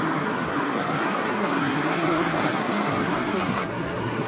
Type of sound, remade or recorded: remade